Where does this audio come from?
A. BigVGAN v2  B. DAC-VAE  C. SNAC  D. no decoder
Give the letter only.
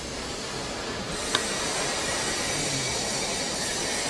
D